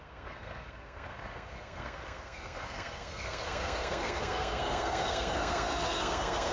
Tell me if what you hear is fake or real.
fake